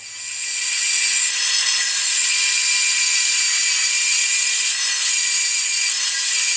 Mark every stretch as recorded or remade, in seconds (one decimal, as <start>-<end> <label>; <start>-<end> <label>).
0.0-0.5 recorded; 0.5-2.3 remade; 2.3-6.6 recorded